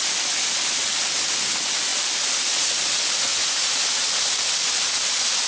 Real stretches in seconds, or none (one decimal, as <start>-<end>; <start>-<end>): 0.0-3.3; 4.1-5.5